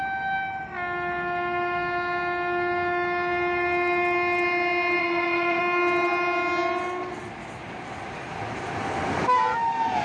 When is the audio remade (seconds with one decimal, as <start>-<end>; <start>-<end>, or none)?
5.0-5.6